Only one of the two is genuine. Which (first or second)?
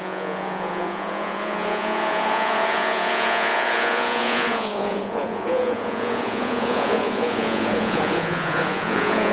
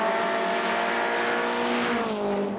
second